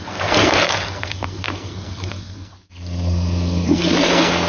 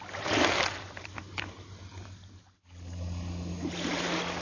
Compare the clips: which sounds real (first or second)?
second